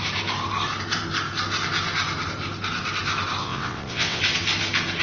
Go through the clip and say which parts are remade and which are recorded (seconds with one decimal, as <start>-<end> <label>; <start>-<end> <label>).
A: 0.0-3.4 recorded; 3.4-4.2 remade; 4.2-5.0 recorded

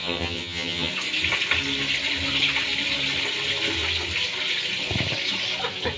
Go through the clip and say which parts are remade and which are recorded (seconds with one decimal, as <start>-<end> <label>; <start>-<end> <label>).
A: 0.0-0.9 remade; 0.9-6.0 recorded

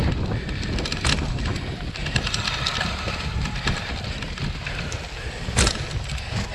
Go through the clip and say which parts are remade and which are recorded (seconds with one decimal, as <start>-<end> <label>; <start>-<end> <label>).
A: 0.0-2.0 recorded; 2.0-5.9 remade; 5.9-6.5 recorded

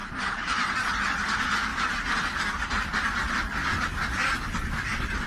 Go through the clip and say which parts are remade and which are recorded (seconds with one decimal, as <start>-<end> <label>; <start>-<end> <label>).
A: 0.0-0.9 remade; 0.9-5.3 recorded

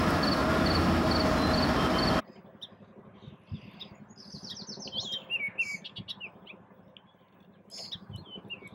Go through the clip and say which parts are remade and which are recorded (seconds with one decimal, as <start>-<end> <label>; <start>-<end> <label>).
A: 0.0-8.7 recorded